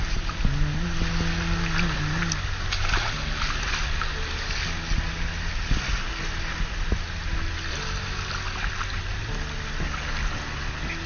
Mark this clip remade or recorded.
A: recorded